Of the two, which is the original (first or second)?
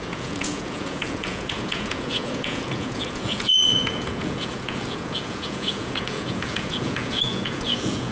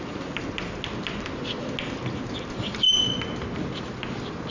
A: second